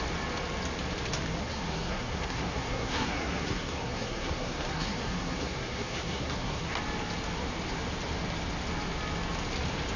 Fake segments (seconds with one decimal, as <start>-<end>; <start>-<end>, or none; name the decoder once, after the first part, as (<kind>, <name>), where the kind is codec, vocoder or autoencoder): 1.4-6.7 (codec, SNAC)